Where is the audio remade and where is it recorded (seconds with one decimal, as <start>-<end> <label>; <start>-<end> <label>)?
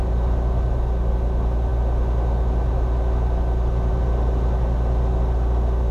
0.0-5.9 recorded